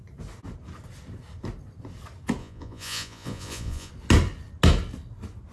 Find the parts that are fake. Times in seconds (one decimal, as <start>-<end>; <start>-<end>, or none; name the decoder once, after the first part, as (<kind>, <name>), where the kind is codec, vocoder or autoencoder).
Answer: 2.4-3.9 (vocoder, Vocos)